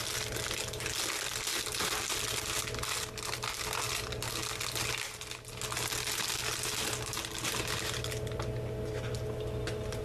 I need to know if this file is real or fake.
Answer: real